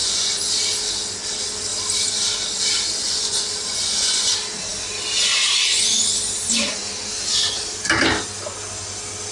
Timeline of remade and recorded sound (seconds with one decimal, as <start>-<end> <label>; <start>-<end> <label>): 0.0-0.5 remade; 0.5-3.0 recorded; 3.0-4.3 remade; 4.3-9.3 recorded

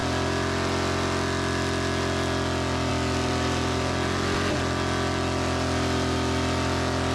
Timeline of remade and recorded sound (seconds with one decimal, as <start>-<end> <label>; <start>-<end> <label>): 0.0-7.1 recorded

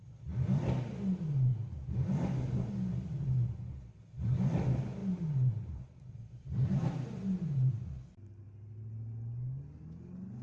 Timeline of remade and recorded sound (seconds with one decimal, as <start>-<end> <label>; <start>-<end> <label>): 0.0-5.0 recorded; 5.0-7.7 remade; 7.7-10.4 recorded

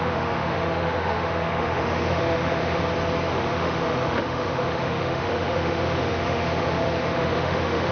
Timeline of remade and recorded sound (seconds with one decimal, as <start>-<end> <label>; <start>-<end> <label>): 0.0-2.8 remade; 2.8-3.3 recorded; 3.3-7.9 remade